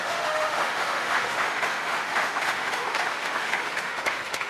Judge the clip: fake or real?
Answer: fake